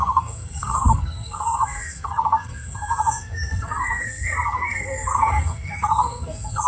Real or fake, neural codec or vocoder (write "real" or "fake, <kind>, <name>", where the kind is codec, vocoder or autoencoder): fake, codec, SNAC